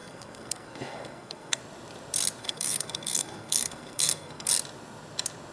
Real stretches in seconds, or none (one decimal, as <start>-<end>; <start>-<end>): 1.6-2.4; 4.5-5.5